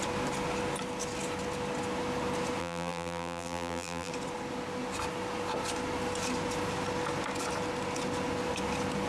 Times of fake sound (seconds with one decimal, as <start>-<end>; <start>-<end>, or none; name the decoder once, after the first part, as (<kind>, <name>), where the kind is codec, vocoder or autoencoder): 2.6-4.1 (vocoder, BigVGAN v2)